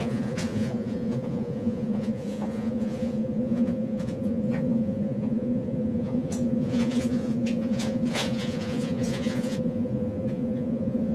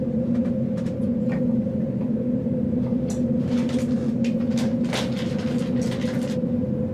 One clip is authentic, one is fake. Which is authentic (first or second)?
second